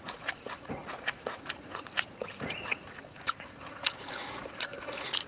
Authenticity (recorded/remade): remade